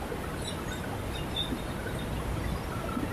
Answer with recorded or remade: recorded